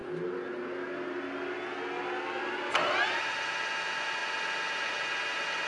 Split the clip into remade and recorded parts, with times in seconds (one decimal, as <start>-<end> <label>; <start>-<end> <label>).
0.0-5.7 recorded